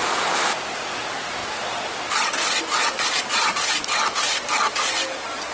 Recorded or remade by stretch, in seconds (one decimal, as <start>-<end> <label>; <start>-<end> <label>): 0.0-2.8 recorded; 2.8-3.6 remade; 3.6-5.5 recorded